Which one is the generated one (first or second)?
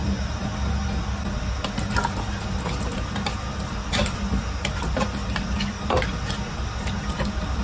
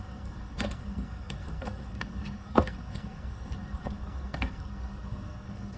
second